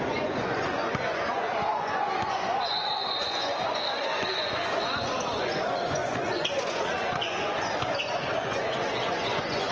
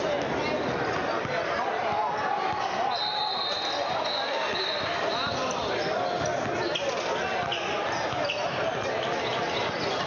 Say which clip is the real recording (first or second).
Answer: second